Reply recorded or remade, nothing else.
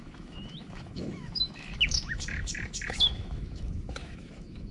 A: remade